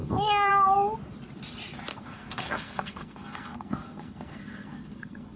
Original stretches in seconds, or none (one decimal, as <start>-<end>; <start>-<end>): 0.5-1.9